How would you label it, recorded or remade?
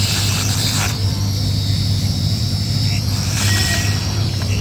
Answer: remade